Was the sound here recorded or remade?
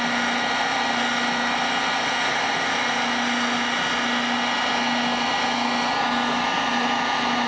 recorded